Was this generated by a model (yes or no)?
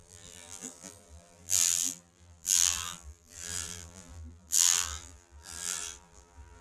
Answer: yes